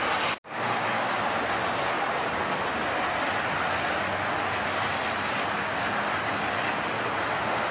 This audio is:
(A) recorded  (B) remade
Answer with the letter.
A